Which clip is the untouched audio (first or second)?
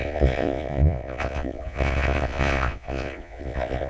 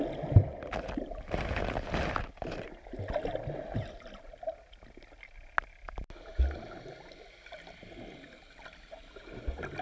second